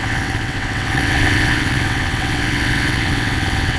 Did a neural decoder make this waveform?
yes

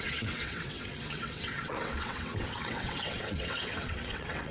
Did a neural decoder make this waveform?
yes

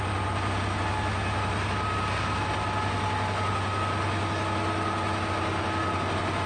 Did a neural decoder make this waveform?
no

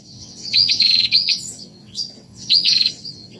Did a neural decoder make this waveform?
yes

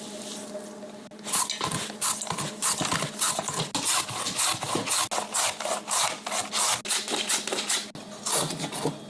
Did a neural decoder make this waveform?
no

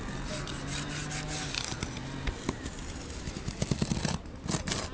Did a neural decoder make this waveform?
no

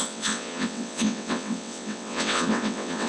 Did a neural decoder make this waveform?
yes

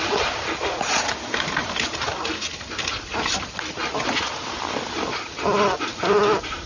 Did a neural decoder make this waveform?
no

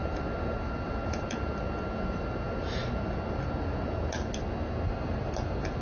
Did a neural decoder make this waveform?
no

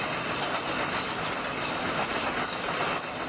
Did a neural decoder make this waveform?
no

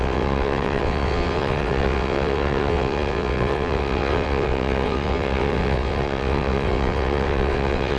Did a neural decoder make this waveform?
yes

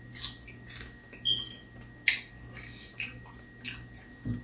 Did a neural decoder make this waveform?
no